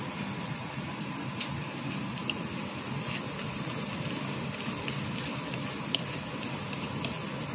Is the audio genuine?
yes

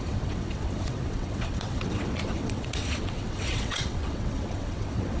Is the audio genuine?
no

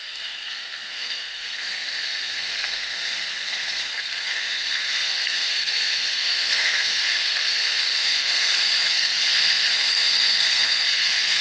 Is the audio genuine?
no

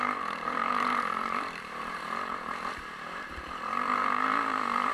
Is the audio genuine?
no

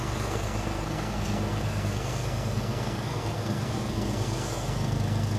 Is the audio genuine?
no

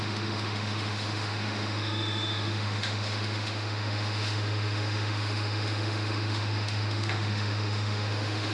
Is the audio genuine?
no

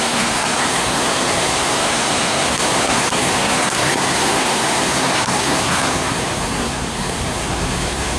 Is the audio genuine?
no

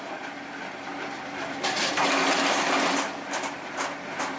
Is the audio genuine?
yes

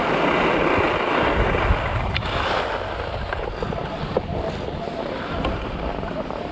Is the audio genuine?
yes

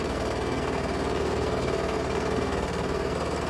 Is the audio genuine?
no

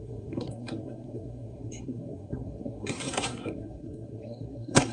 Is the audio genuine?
no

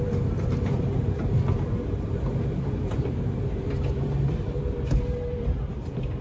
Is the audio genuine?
no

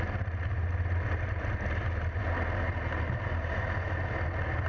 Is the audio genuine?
yes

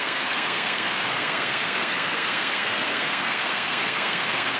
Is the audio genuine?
no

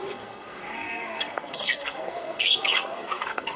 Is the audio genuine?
no